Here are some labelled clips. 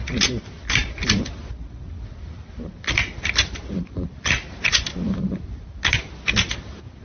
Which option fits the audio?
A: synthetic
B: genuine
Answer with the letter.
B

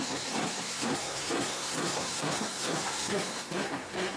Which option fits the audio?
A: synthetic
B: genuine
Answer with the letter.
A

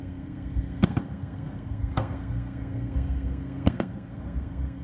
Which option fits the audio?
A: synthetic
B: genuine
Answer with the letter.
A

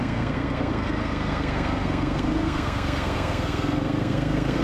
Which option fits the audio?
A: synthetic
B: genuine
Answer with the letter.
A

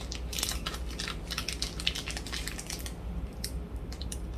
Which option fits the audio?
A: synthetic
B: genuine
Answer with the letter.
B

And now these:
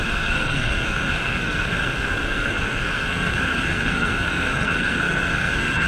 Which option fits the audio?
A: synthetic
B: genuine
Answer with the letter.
A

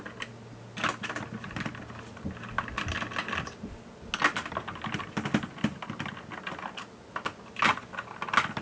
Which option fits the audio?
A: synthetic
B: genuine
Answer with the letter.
B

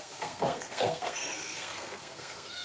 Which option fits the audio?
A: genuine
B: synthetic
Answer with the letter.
B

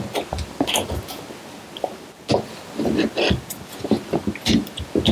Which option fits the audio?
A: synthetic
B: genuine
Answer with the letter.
B